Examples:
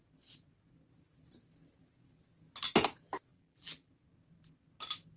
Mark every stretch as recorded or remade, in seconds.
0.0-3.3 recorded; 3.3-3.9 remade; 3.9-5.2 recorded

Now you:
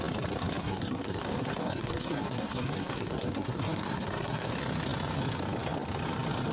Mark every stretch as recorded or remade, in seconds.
0.0-0.6 recorded; 0.6-4.5 remade; 4.5-6.5 recorded

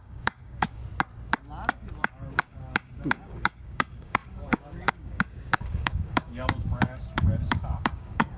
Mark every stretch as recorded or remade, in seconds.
0.0-0.8 remade; 0.8-2.0 recorded; 2.0-8.4 remade

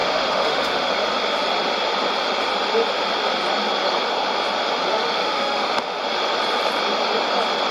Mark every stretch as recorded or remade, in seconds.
0.0-0.9 remade; 0.9-4.9 recorded; 4.9-6.0 remade; 6.0-7.7 recorded

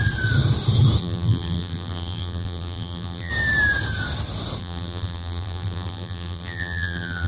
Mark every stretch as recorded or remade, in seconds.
0.0-1.0 recorded; 1.0-3.3 remade; 3.3-4.6 recorded; 4.6-7.3 remade